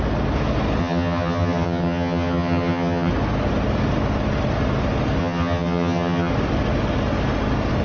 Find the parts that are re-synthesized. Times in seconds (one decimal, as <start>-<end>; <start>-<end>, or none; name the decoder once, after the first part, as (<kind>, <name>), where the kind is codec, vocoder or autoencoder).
0.8-3.1 (vocoder, HiFi-GAN); 5.2-6.3